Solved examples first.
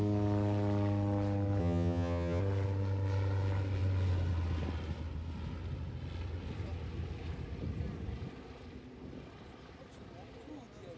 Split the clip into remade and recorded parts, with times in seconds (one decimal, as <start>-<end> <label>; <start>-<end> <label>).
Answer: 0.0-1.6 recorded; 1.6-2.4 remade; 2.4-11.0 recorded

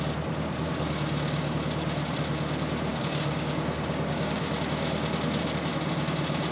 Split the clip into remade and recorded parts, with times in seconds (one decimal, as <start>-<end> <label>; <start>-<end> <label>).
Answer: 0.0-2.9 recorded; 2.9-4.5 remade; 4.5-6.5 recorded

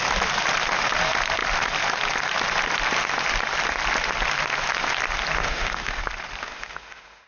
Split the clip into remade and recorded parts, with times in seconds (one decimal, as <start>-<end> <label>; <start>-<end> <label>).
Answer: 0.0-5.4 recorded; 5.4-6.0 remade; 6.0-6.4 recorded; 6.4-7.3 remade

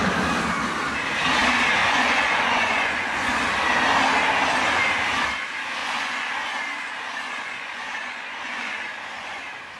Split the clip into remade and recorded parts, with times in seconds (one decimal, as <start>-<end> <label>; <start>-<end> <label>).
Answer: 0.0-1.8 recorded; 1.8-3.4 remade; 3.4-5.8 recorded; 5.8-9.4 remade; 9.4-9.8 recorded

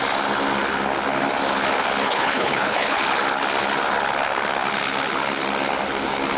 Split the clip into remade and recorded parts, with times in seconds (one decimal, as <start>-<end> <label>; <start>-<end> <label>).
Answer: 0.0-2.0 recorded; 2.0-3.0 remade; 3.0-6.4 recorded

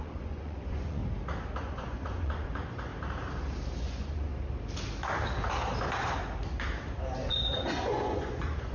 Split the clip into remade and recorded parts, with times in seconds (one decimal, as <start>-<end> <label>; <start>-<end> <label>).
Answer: 0.0-1.0 remade; 1.0-1.6 recorded; 1.6-2.9 remade; 2.9-3.8 recorded; 3.8-4.3 remade; 4.3-7.3 recorded; 7.3-8.7 remade